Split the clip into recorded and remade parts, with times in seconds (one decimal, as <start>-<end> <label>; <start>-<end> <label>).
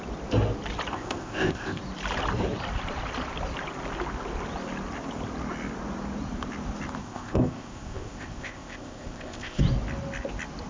0.0-0.9 recorded; 0.9-1.8 remade; 1.8-7.0 recorded; 7.0-9.6 remade; 9.6-10.7 recorded